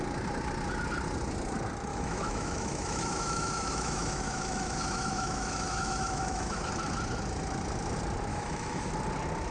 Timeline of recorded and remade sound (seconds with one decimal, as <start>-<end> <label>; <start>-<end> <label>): 0.0-1.9 recorded; 1.9-6.7 remade; 6.7-8.3 recorded; 8.3-8.9 remade; 8.9-9.5 recorded